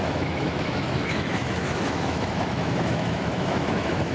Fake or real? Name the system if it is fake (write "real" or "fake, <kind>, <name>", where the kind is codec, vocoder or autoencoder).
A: fake, autoencoder, DAC-VAE